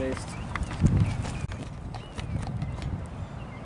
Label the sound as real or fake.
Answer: real